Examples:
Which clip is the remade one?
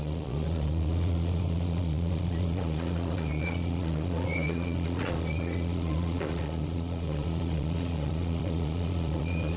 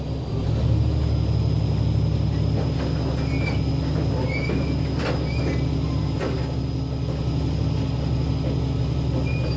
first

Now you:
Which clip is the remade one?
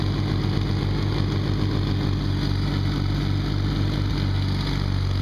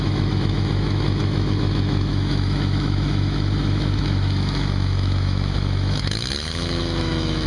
second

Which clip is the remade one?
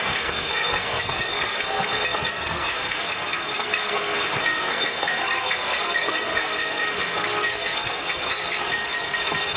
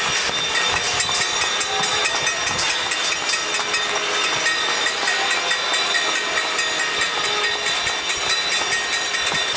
first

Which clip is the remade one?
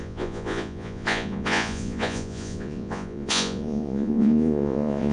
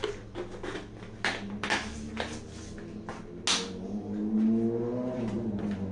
first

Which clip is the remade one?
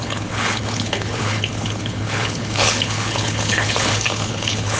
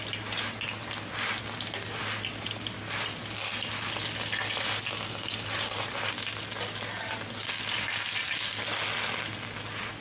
first